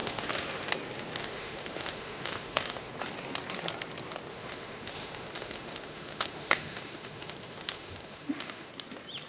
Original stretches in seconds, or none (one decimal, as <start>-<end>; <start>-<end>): 0.7-1.2; 2.9-4.3; 8.7-9.3

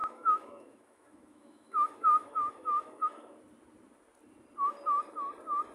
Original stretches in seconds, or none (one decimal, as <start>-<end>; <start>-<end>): 3.4-5.7

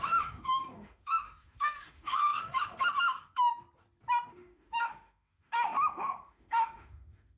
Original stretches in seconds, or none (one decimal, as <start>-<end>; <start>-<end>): 3.6-4.3

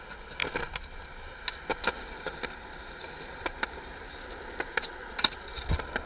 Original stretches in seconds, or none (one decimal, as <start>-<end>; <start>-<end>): 0.0-6.1

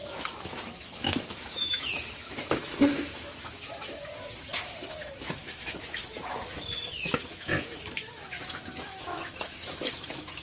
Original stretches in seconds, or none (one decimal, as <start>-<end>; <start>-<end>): none

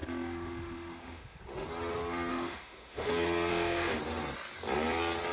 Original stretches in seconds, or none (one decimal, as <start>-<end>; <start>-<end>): 1.4-2.3; 3.1-3.5; 4.0-5.3